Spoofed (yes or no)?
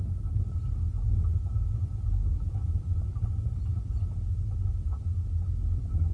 no